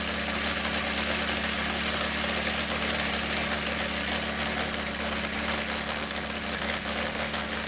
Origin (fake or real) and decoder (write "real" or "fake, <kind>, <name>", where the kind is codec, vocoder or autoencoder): real